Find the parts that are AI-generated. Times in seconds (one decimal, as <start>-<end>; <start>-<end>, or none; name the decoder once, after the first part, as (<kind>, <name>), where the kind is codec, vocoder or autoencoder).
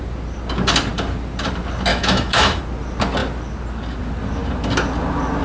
1.9-2.6 (autoencoder, DAC-VAE)